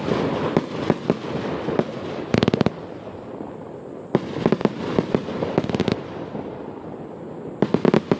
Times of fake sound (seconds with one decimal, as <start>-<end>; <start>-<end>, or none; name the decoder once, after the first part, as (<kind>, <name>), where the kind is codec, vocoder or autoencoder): none